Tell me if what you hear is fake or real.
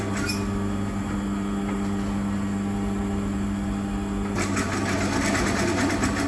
real